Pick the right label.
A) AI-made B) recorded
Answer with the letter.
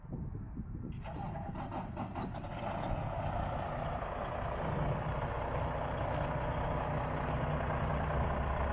B